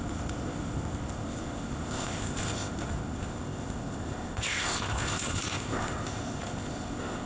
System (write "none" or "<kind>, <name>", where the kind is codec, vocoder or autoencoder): codec, ZipCodec